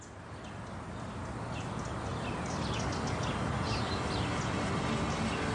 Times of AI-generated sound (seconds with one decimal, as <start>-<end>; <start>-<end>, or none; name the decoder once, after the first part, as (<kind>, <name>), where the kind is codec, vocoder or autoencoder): none